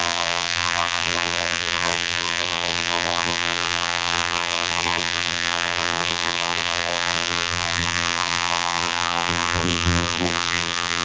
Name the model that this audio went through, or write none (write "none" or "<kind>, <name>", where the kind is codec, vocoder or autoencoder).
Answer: vocoder, BigVGAN v2